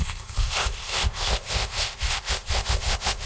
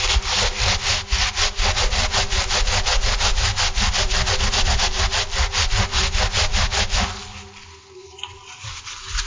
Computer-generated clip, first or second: first